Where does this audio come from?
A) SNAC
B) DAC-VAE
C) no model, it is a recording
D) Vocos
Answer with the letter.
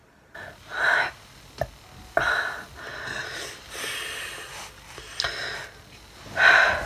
C